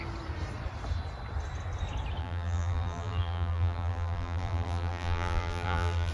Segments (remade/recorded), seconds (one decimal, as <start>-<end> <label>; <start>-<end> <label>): 0.0-2.2 recorded; 2.2-6.1 remade